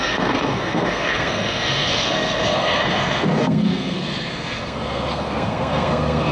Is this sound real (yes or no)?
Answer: no